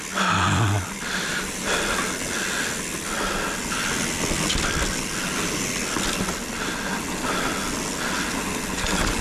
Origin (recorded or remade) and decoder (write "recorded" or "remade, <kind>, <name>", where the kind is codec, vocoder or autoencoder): recorded